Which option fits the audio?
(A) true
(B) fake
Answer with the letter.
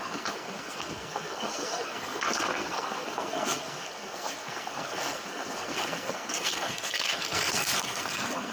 B